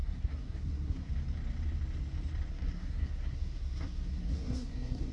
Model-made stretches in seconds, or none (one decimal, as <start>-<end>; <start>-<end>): 0.0-1.1; 2.5-5.1